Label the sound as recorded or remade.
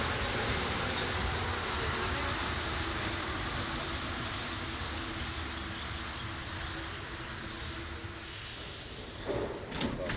recorded